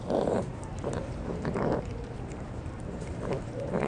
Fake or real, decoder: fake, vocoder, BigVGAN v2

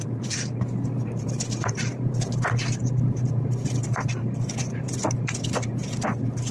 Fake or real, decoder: fake, vocoder, BigVGAN v2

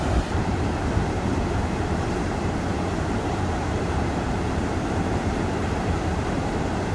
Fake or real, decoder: fake, vocoder, BigVGAN v2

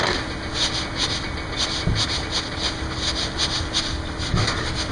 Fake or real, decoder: real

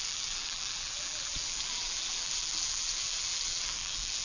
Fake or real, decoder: fake, vocoder, BigVGAN v2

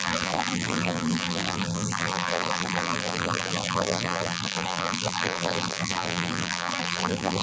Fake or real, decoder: fake, vocoder, BigVGAN v2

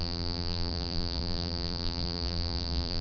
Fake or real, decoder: fake, vocoder, BigVGAN v2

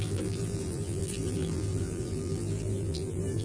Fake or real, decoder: fake, vocoder, BigVGAN v2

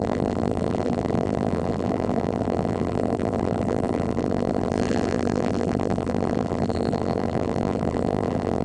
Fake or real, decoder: fake, vocoder, BigVGAN v2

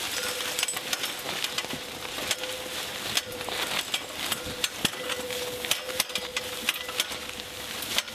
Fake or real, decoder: real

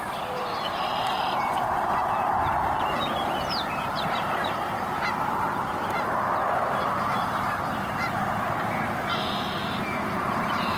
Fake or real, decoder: fake, vocoder, BigVGAN v2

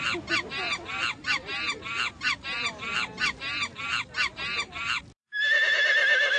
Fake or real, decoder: real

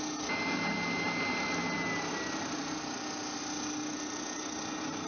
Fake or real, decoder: real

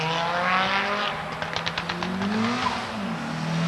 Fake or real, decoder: real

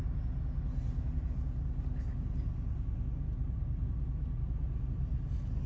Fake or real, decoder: real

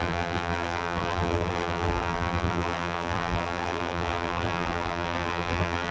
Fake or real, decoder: fake, vocoder, BigVGAN v2